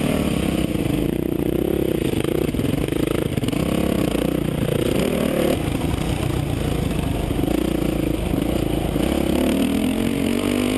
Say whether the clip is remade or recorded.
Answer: recorded